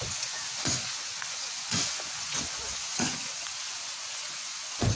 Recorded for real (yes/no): no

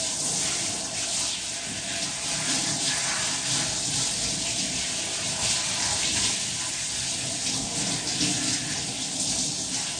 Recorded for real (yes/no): yes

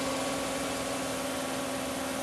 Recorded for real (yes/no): yes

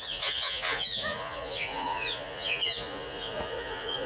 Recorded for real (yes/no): no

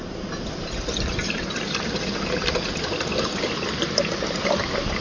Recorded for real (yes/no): yes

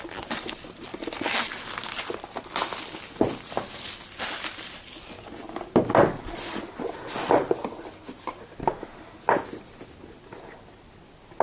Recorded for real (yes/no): yes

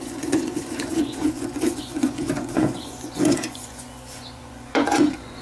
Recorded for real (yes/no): no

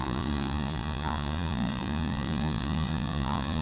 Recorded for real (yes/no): no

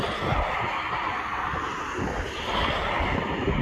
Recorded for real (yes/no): yes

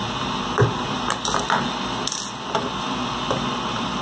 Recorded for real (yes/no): yes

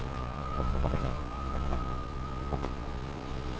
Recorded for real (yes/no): no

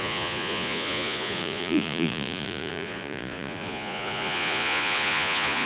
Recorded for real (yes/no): no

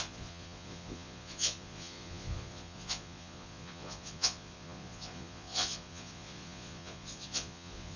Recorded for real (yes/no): no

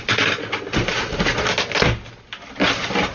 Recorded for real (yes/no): yes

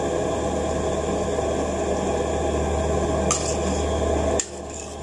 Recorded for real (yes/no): yes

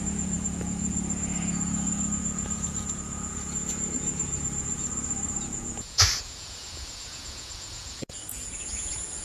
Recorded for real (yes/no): no